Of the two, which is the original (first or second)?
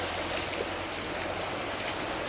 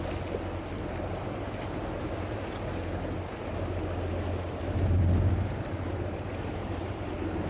first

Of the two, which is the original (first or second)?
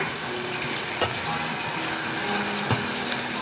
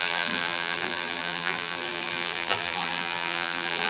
first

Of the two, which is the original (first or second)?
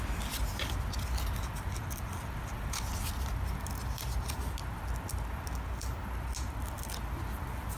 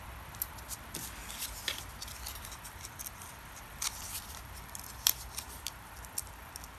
first